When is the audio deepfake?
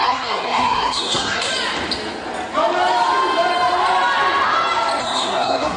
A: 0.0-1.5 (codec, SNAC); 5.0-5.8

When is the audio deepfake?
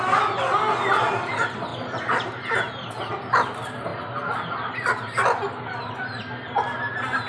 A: none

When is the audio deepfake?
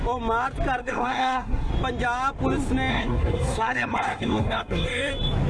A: 0.8-1.7 (codec, SNAC); 2.9-5.1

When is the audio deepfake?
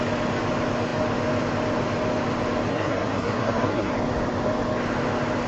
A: 2.7-3.9 (codec, SNAC)